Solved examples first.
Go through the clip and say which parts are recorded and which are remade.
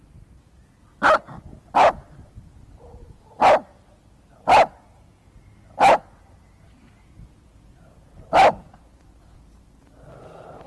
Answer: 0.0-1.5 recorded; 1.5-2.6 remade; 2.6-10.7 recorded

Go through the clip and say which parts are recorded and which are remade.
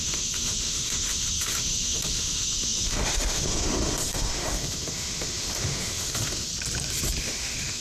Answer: 0.0-6.5 remade; 6.5-7.2 recorded; 7.2-7.8 remade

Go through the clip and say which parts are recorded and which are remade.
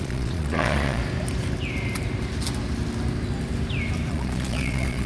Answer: 0.0-1.0 remade; 1.0-4.1 recorded; 4.1-5.1 remade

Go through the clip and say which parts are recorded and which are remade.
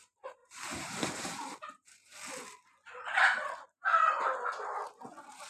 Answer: 0.0-2.1 remade; 2.1-5.5 recorded